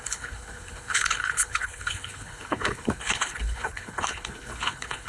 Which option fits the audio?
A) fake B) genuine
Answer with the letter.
A